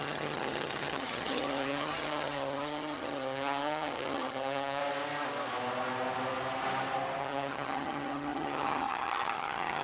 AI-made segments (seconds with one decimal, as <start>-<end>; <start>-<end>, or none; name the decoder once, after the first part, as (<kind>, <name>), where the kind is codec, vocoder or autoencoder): 0.0-4.8 (vocoder, HiFi-GAN); 7.2-9.8